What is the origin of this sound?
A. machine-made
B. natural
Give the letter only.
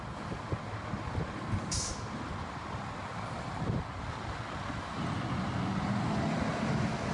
B